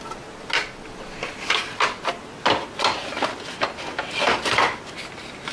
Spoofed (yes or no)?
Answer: no